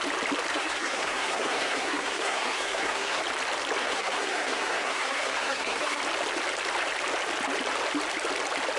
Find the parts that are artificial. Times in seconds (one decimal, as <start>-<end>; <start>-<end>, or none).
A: 0.5-3.2; 3.8-6.0